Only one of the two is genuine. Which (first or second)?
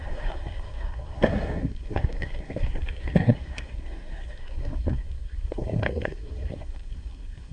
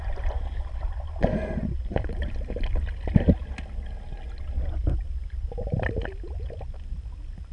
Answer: second